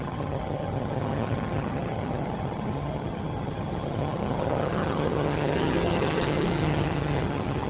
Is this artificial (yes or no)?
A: yes